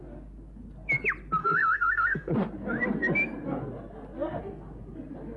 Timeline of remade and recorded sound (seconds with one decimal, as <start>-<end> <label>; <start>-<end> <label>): 0.0-1.4 recorded; 1.4-2.3 remade; 2.3-5.4 recorded